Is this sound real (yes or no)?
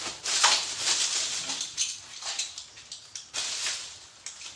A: yes